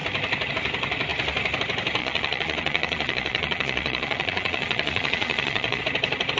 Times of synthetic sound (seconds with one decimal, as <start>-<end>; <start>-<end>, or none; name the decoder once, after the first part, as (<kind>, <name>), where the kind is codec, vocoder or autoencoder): 2.0-5.8 (vocoder, Vocos)